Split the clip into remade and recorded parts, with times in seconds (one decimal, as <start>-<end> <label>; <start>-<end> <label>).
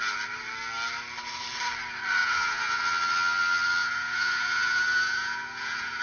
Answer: 0.0-2.2 recorded; 2.2-2.8 remade; 2.8-3.8 recorded; 3.8-6.0 remade